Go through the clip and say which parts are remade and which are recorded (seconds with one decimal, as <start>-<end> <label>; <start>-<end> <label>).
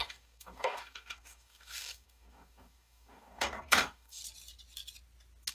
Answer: 0.0-4.2 remade; 4.2-5.5 recorded